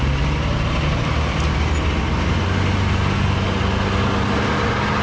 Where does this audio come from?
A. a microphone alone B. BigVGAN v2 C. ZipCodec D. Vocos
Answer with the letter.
A